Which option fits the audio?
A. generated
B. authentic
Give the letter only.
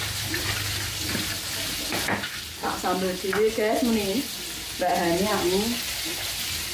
B